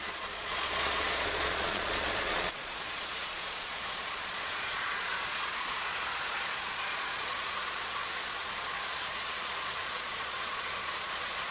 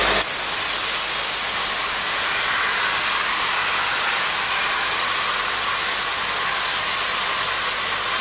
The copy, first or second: first